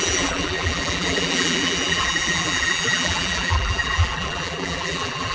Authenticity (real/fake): fake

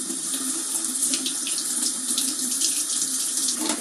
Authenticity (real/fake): fake